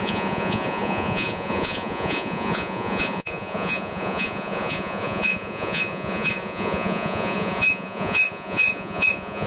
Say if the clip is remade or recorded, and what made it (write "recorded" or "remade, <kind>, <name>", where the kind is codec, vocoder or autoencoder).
remade, vocoder, Vocos